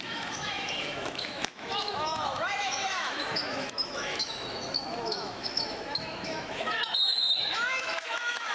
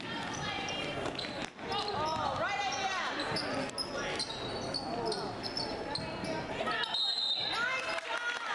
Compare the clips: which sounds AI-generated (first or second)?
first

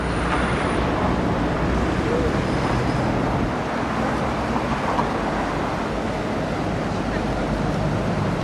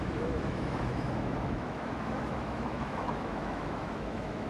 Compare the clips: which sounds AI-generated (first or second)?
second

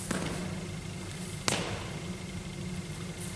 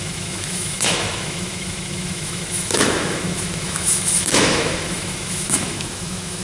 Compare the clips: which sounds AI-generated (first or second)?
second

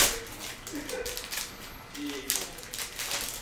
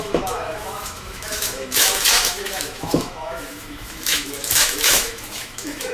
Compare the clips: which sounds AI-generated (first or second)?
second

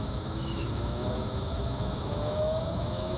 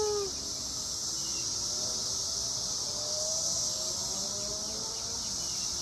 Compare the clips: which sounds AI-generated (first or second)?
first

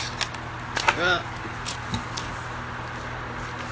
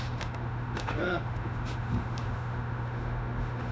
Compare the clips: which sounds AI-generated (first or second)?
second